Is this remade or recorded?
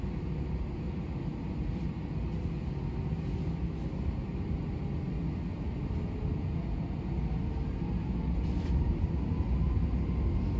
recorded